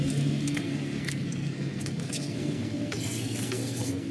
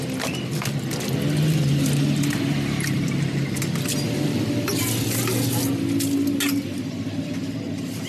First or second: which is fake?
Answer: first